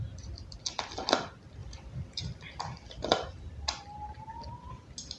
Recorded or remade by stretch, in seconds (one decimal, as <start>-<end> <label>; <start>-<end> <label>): 0.0-1.6 recorded; 1.6-2.6 remade; 2.6-5.2 recorded